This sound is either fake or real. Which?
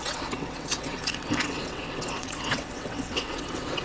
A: fake